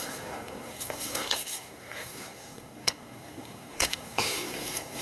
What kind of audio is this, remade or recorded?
remade